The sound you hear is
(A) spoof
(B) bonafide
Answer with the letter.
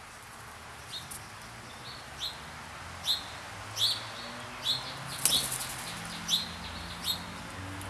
B